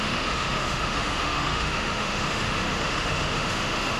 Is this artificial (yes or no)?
yes